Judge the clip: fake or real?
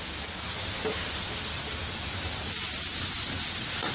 real